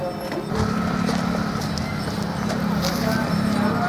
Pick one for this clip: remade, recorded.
recorded